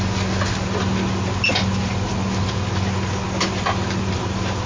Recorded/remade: recorded